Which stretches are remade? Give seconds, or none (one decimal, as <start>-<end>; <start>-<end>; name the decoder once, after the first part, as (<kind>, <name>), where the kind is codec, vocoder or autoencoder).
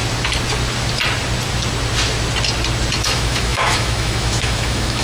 3.0-5.0 (autoencoder, DAC-VAE)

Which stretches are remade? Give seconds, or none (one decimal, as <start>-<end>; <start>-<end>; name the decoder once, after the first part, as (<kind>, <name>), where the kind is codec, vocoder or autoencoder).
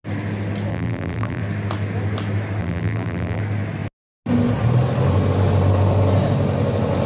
0.7-1.4 (vocoder, BigVGAN v2); 2.6-3.4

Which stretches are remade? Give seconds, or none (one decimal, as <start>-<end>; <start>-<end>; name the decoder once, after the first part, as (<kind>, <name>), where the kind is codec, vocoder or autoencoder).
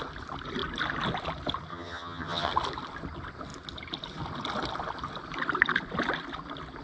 1.7-2.5 (vocoder, HiFi-GAN)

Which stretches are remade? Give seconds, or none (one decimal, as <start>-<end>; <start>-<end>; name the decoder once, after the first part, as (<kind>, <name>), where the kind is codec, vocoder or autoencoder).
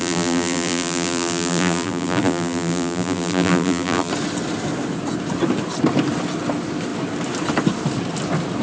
0.0-4.1 (vocoder, BigVGAN v2)